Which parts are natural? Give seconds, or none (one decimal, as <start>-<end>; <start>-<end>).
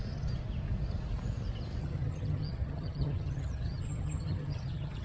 0.0-1.8